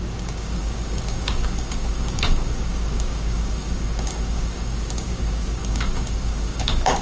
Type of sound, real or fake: fake